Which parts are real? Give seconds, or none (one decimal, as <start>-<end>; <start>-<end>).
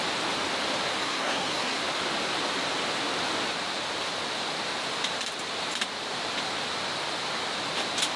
0.0-1.0; 1.8-8.2